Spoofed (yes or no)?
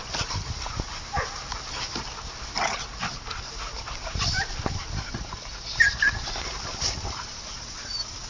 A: no